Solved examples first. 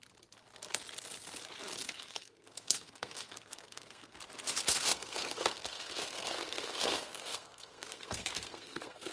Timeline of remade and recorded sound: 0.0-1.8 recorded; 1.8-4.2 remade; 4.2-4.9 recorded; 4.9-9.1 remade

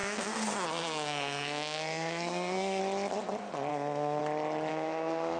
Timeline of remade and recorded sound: 0.0-2.8 remade; 2.8-3.7 recorded; 3.7-4.2 remade; 4.2-4.7 recorded; 4.7-5.4 remade

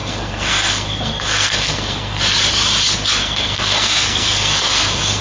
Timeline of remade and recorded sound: 0.0-2.2 remade; 2.2-3.2 recorded; 3.2-5.2 remade

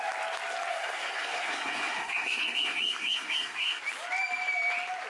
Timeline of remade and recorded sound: 0.0-0.7 recorded; 0.7-3.8 remade; 3.8-5.1 recorded